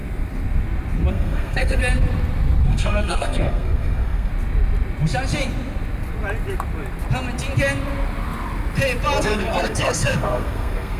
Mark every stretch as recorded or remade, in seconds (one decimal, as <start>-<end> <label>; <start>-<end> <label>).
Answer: 0.0-1.1 recorded; 1.1-1.8 remade; 1.8-2.7 recorded; 2.7-4.3 remade; 4.3-9.2 recorded; 9.2-11.0 remade